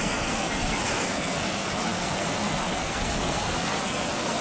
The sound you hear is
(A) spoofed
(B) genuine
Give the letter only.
A